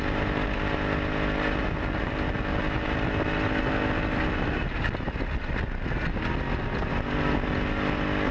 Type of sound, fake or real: real